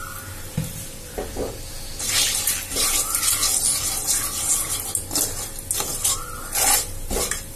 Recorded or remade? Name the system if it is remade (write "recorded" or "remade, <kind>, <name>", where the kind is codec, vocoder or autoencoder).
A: recorded